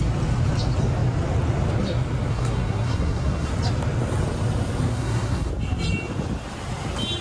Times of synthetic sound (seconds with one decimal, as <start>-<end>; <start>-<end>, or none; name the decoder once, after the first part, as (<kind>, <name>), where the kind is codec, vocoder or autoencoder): 2.3-3.5 (codec, SNAC); 4.9-5.5